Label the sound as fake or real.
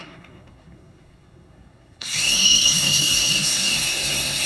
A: fake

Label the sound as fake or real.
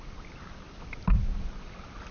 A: real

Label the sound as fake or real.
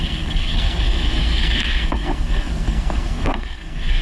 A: fake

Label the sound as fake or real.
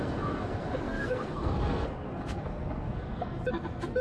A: fake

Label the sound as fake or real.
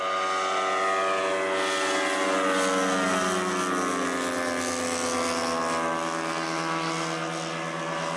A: real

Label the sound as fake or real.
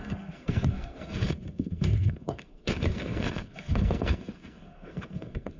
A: fake